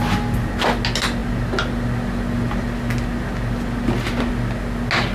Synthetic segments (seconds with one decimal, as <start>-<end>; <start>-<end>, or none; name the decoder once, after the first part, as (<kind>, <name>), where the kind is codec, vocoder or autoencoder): none